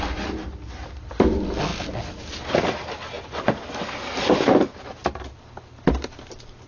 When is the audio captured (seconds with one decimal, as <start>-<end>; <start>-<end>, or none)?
0.0-0.4; 1.1-1.7; 2.2-6.7